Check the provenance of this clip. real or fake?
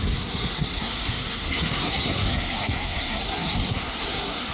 fake